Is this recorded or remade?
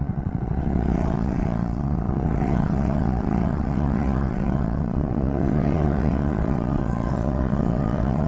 remade